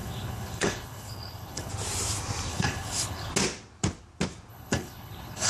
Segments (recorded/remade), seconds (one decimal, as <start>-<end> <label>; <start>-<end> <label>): 0.0-1.7 remade; 1.7-2.5 recorded; 2.5-3.3 remade; 3.3-4.5 recorded; 4.5-5.5 remade

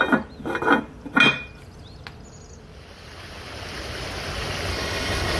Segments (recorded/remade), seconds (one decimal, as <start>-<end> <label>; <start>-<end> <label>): 0.0-4.7 recorded; 4.7-5.4 remade

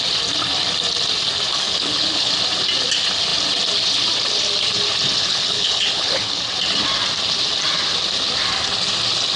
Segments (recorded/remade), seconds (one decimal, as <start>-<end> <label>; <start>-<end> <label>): 0.0-1.5 recorded; 1.5-2.3 remade; 2.3-5.2 recorded; 5.2-6.4 remade; 6.4-9.4 recorded

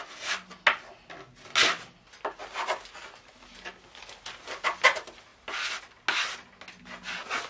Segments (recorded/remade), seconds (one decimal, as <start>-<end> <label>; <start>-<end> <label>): 0.0-7.5 recorded

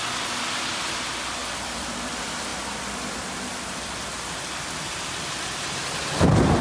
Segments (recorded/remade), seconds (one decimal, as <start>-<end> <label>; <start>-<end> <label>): 0.0-6.6 recorded

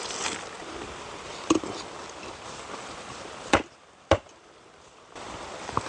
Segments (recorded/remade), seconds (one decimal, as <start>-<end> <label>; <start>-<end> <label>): 0.0-5.9 recorded

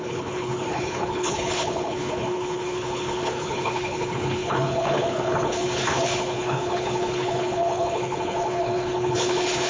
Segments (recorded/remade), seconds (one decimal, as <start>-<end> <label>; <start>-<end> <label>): 0.0-9.7 remade